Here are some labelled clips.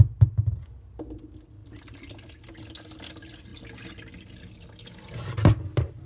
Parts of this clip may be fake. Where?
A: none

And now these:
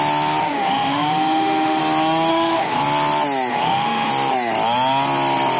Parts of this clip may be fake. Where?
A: 0.4-1.8 (autoencoder, DAC-VAE); 2.3-2.8; 3.5-4.1

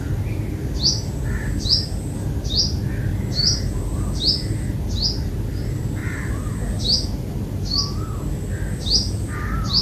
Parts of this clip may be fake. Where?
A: none

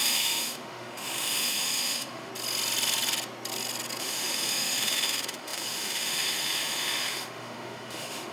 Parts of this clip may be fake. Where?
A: 0.0-2.3 (autoencoder, DAC-VAE); 4.0-8.3

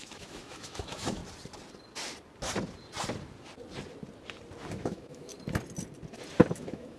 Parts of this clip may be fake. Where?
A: 0.0-1.2 (autoencoder, DAC-VAE); 4.7-5.3; 6.5-7.0